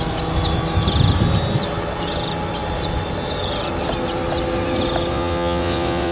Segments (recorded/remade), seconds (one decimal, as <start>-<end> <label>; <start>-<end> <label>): 0.0-5.1 recorded; 5.1-6.1 remade